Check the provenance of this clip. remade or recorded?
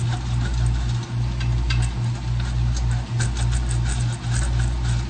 recorded